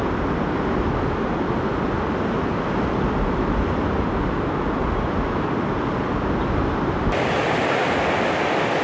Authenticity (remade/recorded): recorded